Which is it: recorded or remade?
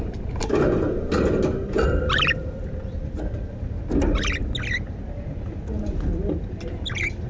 recorded